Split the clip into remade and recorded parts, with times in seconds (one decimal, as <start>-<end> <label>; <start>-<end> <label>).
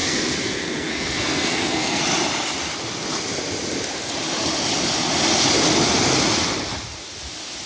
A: 0.0-2.0 remade; 2.0-7.7 recorded